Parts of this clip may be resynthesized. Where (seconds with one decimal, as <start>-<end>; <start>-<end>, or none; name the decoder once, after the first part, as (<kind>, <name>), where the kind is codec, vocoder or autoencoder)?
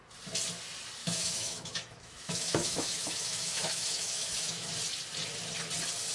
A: 1.0-4.7 (autoencoder, DAC-VAE)